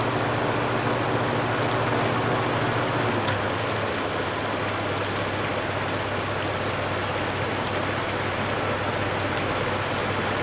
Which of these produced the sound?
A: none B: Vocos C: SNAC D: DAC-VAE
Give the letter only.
A